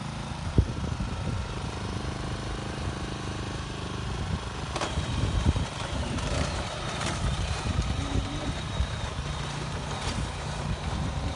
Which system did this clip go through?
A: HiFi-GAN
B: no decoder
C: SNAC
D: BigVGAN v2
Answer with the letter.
D